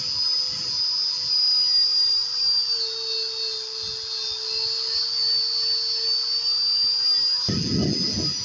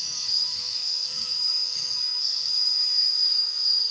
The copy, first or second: second